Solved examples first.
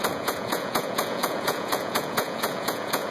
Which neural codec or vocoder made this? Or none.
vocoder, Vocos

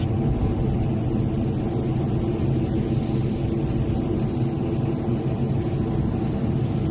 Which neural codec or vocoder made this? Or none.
none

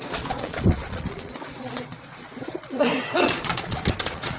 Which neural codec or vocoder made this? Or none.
vocoder, Vocos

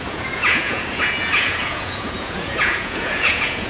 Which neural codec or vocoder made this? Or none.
vocoder, Vocos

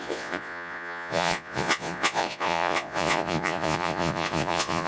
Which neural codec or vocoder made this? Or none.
vocoder, Vocos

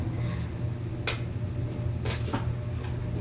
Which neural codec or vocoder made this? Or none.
none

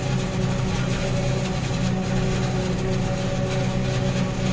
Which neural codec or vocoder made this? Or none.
none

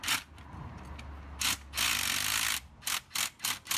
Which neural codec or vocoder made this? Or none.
none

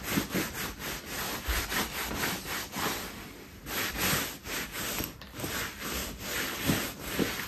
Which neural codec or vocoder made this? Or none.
none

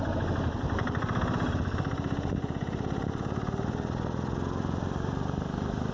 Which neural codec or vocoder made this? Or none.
none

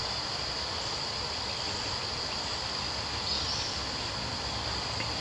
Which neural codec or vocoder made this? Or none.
none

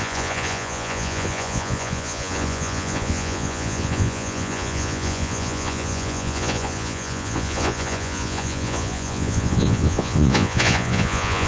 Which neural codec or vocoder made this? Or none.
vocoder, Vocos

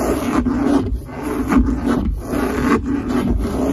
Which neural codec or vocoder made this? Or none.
none